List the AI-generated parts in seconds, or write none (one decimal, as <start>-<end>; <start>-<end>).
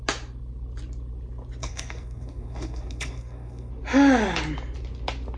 1.6-3.7